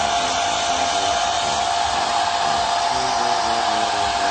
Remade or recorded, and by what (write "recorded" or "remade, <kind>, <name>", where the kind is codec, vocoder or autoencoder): recorded